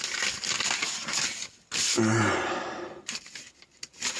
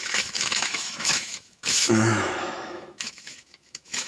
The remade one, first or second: second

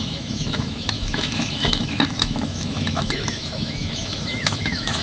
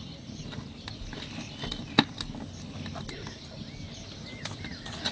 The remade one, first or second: first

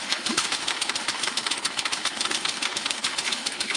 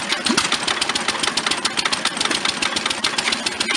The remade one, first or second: first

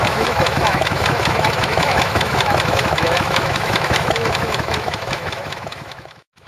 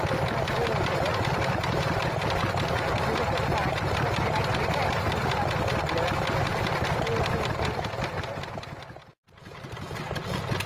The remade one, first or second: first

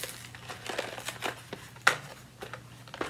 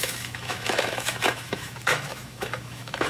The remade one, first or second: second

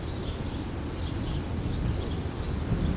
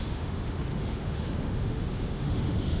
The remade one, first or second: second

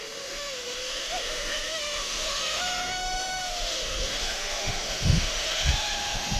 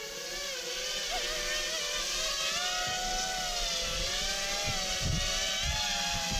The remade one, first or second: first